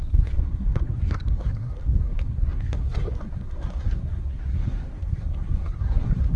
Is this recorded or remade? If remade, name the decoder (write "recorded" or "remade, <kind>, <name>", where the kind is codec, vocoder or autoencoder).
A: remade, codec, SNAC